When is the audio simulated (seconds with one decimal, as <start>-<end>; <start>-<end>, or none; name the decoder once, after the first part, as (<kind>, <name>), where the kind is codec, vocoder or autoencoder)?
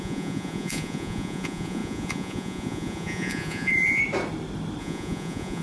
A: 0.0-4.0 (vocoder, Vocos); 4.8-5.6